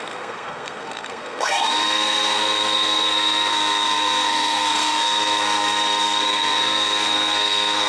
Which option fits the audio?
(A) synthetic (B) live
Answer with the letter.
A